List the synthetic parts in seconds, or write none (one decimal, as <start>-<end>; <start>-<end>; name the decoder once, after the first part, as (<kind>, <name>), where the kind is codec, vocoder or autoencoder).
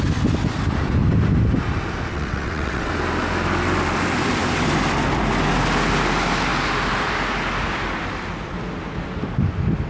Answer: 2.1-2.9 (vocoder, WaveNeXt)